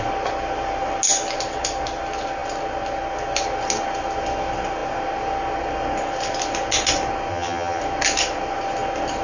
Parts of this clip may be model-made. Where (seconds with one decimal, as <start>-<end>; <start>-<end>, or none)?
7.3-7.8